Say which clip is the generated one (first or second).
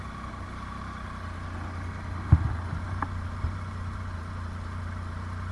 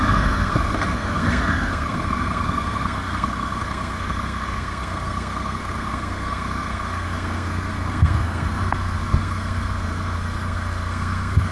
second